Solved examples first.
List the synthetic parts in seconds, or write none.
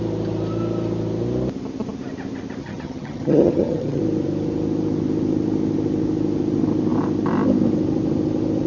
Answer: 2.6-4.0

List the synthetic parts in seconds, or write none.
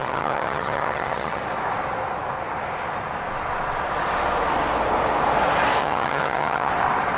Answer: 0.0-1.4; 5.8-6.7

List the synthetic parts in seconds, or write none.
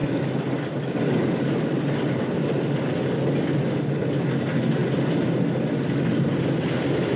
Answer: none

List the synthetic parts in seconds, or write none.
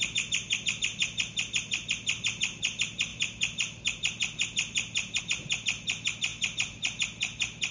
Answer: none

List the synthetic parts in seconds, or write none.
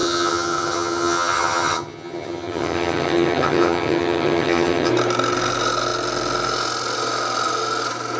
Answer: 0.0-4.9